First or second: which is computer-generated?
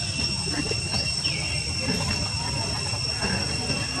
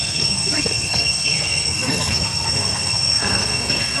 second